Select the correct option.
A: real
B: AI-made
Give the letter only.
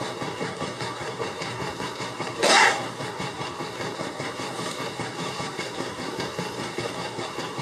B